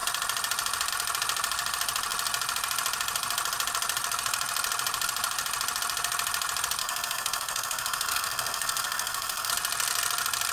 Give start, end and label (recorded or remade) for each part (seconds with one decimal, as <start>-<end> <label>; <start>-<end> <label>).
0.0-6.8 recorded; 6.8-9.5 remade; 9.5-10.5 recorded

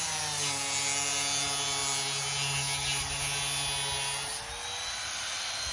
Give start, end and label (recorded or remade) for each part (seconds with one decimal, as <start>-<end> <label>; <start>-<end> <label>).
0.0-5.7 recorded

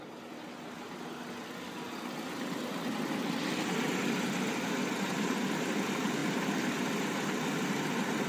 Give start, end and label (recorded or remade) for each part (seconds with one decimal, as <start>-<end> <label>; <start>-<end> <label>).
0.0-8.3 recorded

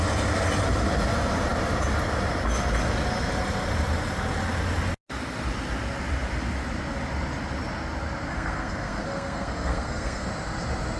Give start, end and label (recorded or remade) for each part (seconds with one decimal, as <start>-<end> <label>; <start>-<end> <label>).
0.0-8.3 recorded; 8.3-10.3 remade; 10.3-11.0 recorded

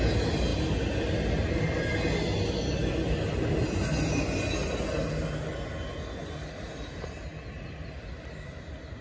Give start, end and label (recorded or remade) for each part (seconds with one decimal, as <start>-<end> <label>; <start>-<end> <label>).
0.0-9.0 recorded